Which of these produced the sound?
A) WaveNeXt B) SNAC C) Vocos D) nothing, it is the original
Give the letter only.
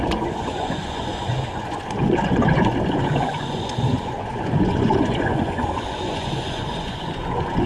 C